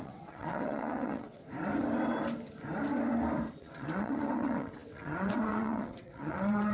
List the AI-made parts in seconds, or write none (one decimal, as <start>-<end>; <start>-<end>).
0.0-1.4; 3.6-6.7